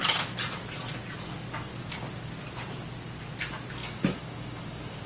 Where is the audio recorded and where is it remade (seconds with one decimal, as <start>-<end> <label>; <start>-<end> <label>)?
0.0-3.8 recorded; 3.8-5.1 remade